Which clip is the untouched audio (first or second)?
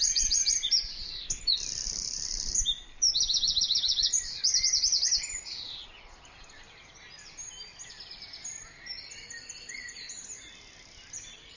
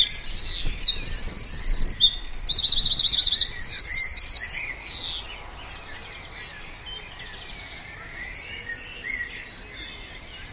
second